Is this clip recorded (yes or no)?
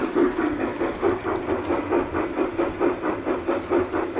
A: yes